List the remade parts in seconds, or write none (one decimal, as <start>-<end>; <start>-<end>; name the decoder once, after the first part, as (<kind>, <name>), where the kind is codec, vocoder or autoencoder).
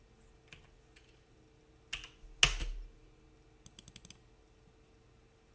none